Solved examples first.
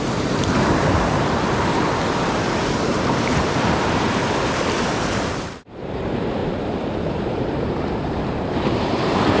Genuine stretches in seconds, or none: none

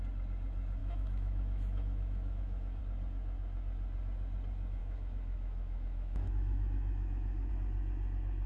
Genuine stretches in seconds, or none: 0.0-0.8; 2.8-4.8; 7.5-8.5

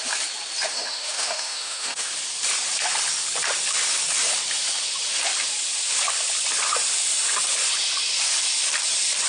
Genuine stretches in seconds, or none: 0.0-0.7; 2.1-9.3

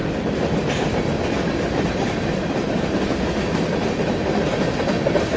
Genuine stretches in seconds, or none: 0.0-5.4

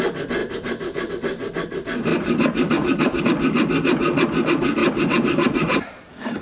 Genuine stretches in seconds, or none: 0.0-0.4; 1.1-2.1; 3.2-4.8

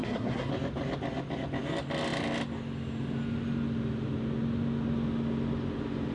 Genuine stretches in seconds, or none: 0.5-6.1

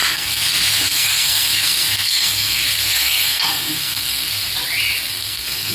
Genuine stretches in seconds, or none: 4.5-5.1